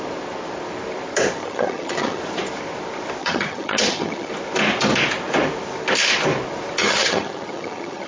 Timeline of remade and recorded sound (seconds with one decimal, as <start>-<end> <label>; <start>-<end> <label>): 0.0-1.4 recorded; 1.4-2.2 remade; 2.2-3.2 recorded; 3.2-4.3 remade; 4.3-6.8 recorded; 6.8-8.1 remade